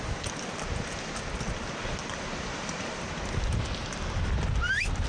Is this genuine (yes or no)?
yes